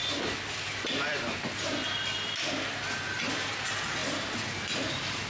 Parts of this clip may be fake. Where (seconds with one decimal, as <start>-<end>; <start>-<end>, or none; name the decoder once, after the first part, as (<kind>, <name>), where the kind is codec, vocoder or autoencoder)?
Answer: 0.0-4.0 (vocoder, BigVGAN v2); 4.6-5.3